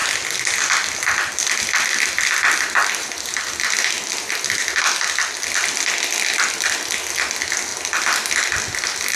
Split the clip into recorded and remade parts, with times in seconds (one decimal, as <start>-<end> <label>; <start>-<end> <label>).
0.0-2.8 recorded; 2.8-3.5 remade; 3.5-9.2 recorded